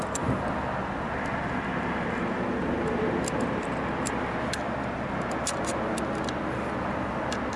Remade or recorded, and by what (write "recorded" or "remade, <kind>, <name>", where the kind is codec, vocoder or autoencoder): recorded